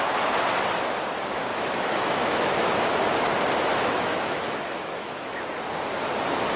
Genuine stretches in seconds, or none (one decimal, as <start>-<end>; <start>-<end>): 0.0-1.5; 2.7-3.7; 5.4-6.6

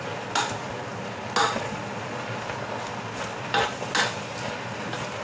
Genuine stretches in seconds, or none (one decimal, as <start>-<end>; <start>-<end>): 0.0-5.2